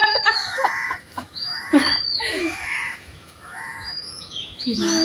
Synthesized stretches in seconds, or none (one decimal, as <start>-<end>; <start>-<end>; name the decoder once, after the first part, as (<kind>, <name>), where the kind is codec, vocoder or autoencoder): 0.0-5.0 (autoencoder, DAC-VAE)